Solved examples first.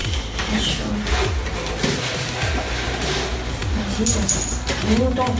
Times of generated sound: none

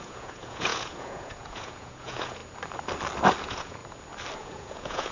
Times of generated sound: 0.0-2.4; 3.4-3.8; 4.4-5.1